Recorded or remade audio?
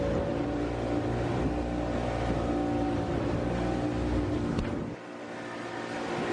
recorded